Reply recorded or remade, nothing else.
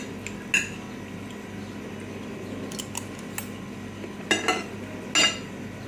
recorded